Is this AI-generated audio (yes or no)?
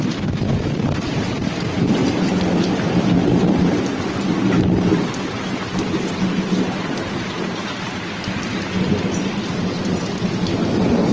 no